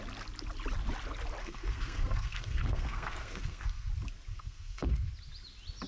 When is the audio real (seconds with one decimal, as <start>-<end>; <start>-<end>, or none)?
0.0-1.4; 3.9-4.3; 5.1-5.9